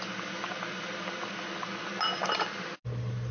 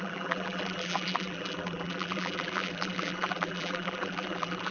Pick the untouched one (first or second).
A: first